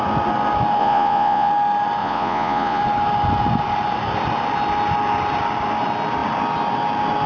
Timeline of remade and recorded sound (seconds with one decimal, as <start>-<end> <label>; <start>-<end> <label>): 0.0-0.8 recorded; 0.8-1.5 remade; 1.5-2.0 recorded; 2.0-2.8 remade; 2.8-7.3 recorded